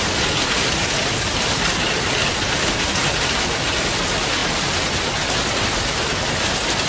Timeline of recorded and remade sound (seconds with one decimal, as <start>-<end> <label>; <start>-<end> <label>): 0.0-6.9 recorded